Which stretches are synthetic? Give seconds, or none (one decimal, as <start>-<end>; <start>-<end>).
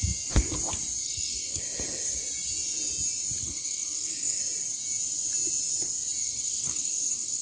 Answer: 1.0-1.6; 3.4-4.4; 6.2-7.4